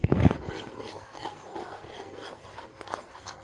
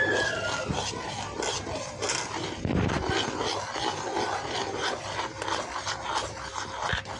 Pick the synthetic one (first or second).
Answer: first